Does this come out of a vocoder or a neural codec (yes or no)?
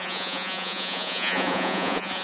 yes